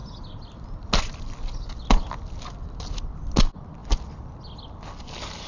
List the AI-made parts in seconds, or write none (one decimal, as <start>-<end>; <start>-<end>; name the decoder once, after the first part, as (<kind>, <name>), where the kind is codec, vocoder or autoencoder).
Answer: none